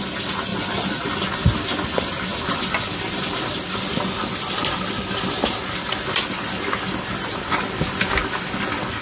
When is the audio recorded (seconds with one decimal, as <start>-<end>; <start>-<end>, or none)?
0.0-0.5; 1.1-9.0